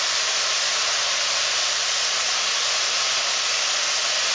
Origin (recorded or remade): recorded